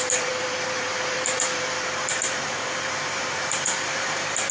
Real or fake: fake